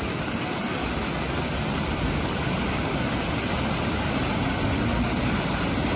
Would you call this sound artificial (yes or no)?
no